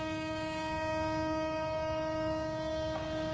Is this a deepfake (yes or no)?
yes